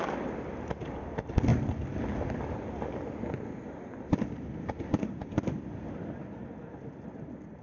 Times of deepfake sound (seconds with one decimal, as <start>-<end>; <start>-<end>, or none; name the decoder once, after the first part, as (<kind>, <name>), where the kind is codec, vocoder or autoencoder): none